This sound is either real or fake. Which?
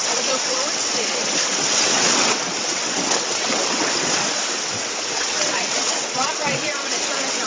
fake